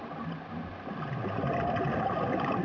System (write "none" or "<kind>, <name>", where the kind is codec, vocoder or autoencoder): none